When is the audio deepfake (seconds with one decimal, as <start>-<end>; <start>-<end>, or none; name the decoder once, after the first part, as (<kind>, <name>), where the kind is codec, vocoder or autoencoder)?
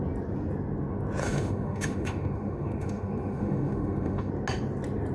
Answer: 1.2-4.3 (autoencoder, DAC-VAE)